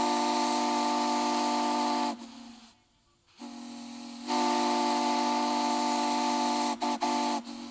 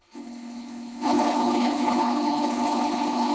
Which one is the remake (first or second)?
second